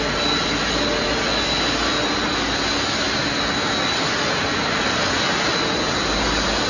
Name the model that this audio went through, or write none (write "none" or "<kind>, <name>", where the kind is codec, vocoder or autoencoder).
none